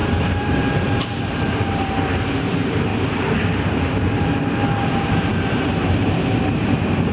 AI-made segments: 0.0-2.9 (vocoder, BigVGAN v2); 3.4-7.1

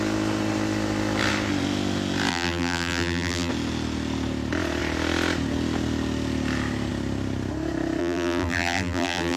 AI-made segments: 2.3-3.5 (vocoder, BigVGAN v2); 8.0-9.4

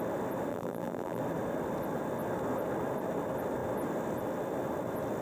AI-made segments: 0.5-1.2 (vocoder, BigVGAN v2)

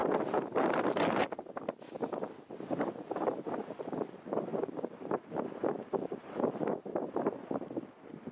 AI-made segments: 4.5-7.5 (vocoder, BigVGAN v2)

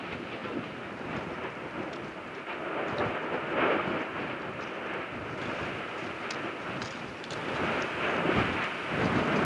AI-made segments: 0.4-1.5 (vocoder, BigVGAN v2)

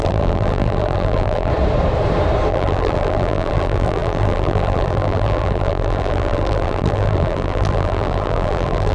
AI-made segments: 0.0-1.5 (vocoder, BigVGAN v2); 2.5-8.9

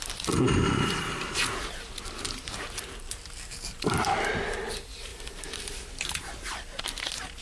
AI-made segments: 0.6-1.4 (vocoder, BigVGAN v2); 5.1-7.0

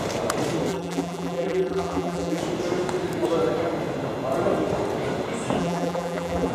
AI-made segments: 0.7-2.4 (vocoder, BigVGAN v2); 5.6-6.5